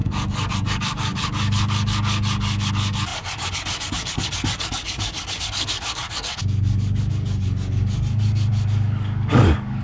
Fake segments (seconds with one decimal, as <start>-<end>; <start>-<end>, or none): 0.0-9.8